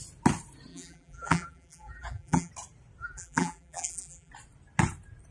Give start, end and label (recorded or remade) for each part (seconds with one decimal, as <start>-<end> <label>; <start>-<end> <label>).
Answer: 0.0-0.7 recorded; 0.7-2.5 remade; 2.5-3.0 recorded; 3.0-4.3 remade; 4.3-5.3 recorded